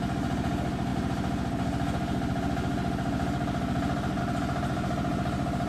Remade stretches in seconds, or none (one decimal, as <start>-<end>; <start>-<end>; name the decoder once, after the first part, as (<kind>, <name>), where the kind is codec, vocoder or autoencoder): none